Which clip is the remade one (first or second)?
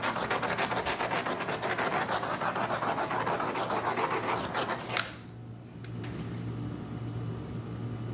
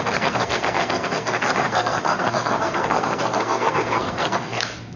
second